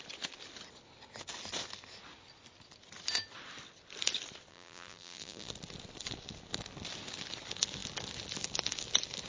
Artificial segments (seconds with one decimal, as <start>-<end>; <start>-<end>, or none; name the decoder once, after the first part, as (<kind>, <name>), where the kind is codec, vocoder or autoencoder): 4.5-5.5 (vocoder, BigVGAN v2)